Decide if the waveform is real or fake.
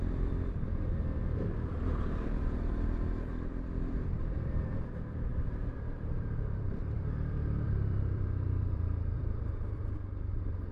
fake